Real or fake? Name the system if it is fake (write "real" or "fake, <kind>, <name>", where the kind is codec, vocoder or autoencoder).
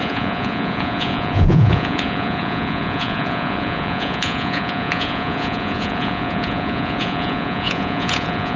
fake, vocoder, Vocos